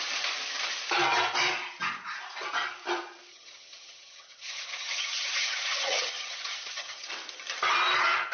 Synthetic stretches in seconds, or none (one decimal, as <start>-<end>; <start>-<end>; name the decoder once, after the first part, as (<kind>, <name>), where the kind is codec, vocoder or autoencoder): 3.3-7.1 (vocoder, HiFi-GAN)

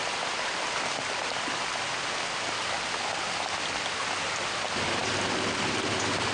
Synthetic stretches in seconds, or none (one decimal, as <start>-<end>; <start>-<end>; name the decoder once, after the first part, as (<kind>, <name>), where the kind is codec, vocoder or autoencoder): none